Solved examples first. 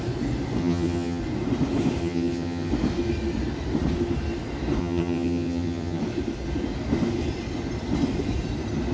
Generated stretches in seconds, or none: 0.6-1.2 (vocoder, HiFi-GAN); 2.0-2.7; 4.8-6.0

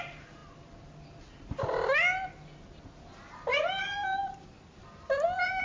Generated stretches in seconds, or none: none

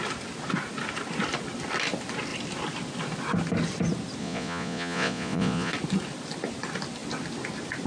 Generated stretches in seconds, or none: 4.2-5.7 (vocoder, Vocos)

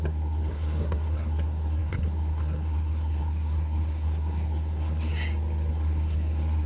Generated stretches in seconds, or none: 0.0-5.1 (codec, SNAC); 5.7-6.7